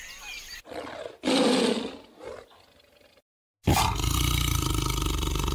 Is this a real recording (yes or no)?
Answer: yes